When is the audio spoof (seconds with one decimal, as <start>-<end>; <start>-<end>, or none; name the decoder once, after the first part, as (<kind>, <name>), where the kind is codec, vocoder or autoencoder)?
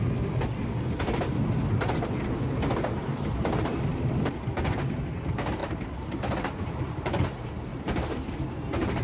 3.0-3.6 (vocoder, BigVGAN v2); 5.6-7.2; 7.7-9.0